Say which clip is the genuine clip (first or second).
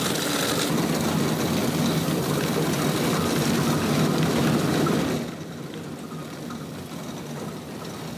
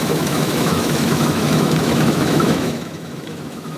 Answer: first